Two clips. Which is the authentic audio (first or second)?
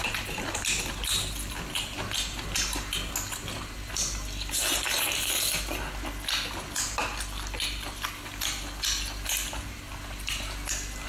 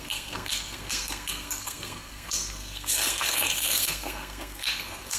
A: first